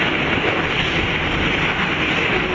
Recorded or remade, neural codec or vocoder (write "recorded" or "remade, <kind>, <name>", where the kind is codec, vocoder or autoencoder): recorded